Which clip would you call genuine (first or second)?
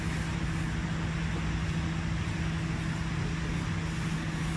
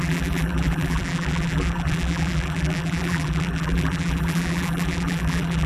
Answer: first